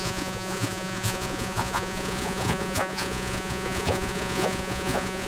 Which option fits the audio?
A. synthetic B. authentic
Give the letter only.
A